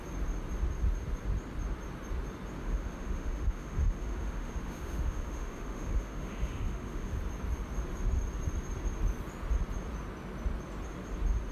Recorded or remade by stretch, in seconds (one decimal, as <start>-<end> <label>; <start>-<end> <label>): 0.0-2.6 recorded; 2.6-7.2 remade; 7.2-11.5 recorded

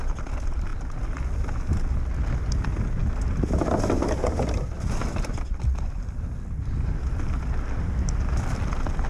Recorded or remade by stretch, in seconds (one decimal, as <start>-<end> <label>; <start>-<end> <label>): 0.0-9.1 recorded

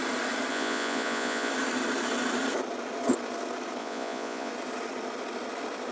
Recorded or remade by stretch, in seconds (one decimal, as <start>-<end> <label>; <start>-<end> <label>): 0.0-0.5 recorded; 0.5-1.5 remade; 1.5-3.8 recorded; 3.8-4.5 remade; 4.5-5.9 recorded

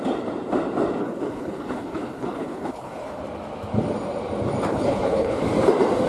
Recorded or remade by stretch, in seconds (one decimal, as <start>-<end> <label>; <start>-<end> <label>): 0.0-1.0 recorded; 1.0-3.2 remade; 3.2-4.7 recorded; 4.7-5.4 remade; 5.4-6.1 recorded

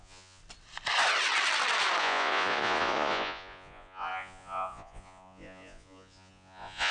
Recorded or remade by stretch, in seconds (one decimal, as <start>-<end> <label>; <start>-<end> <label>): 0.0-0.4 remade; 0.4-2.0 recorded; 2.0-6.9 remade

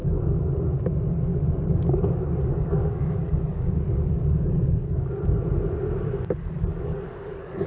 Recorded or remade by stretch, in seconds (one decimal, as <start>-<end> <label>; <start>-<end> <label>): 0.0-0.5 remade; 0.5-1.3 recorded; 1.3-5.1 remade; 5.1-6.7 recorded; 6.7-7.7 remade

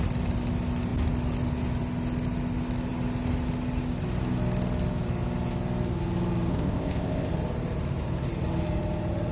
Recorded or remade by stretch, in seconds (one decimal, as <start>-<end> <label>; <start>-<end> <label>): 0.0-6.5 recorded; 6.5-7.3 remade; 7.3-9.3 recorded

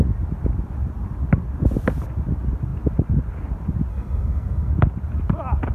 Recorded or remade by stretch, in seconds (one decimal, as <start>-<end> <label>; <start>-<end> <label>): 0.0-3.9 recorded; 3.9-4.7 remade; 4.7-5.7 recorded